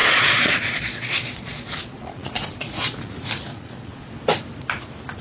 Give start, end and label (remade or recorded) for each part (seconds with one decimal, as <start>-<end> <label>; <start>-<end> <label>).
0.0-3.1 remade; 3.1-3.5 recorded; 3.5-4.1 remade; 4.1-5.2 recorded